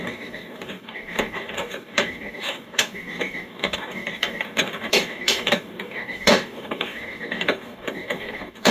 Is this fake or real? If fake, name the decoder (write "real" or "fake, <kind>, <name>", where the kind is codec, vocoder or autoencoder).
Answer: fake, codec, DAC